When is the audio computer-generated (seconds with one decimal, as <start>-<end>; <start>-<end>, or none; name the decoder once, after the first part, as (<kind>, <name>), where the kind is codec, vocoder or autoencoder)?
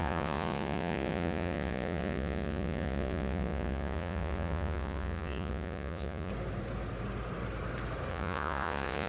0.0-6.3 (vocoder, Vocos); 8.1-9.1